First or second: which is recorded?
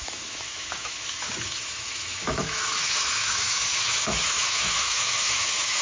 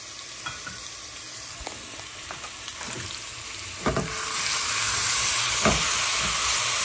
second